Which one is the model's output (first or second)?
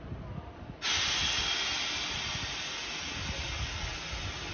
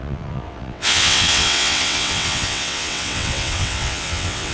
second